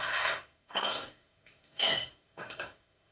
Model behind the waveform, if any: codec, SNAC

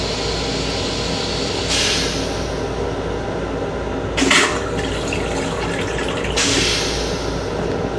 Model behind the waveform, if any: none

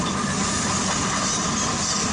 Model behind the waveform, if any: none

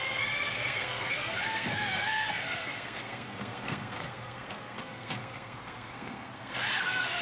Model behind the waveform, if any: codec, SNAC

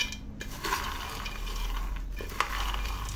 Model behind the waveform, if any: none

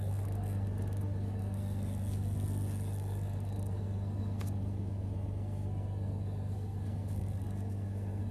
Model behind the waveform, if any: codec, SNAC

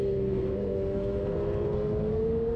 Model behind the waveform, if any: codec, SNAC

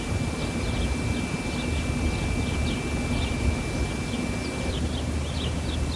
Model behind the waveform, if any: none